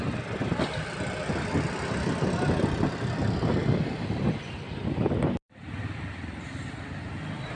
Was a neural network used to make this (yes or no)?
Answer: no